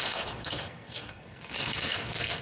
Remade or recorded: remade